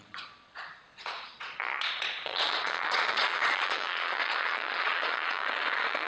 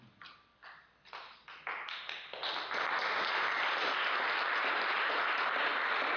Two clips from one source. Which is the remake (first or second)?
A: first